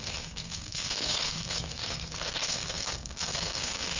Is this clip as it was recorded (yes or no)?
no